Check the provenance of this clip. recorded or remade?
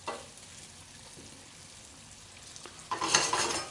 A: recorded